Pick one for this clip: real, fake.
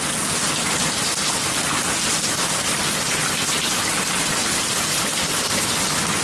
real